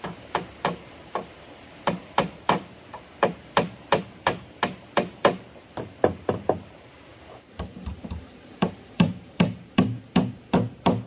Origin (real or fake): fake